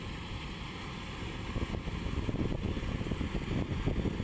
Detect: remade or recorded recorded